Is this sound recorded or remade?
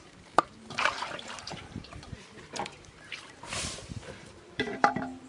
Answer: remade